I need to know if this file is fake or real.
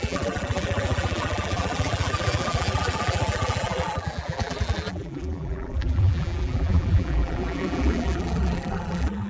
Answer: fake